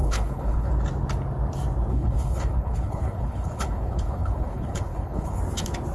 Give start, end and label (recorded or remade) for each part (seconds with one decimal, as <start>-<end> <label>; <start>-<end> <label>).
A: 0.0-0.7 remade; 0.7-1.9 recorded; 1.9-5.4 remade; 5.4-5.9 recorded